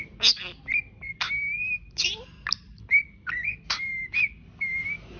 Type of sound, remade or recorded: recorded